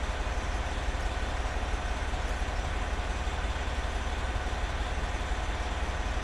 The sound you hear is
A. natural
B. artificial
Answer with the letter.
A